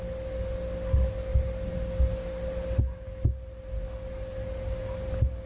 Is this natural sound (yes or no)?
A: yes